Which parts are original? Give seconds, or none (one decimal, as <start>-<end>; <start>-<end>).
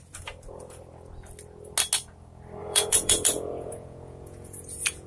0.0-2.6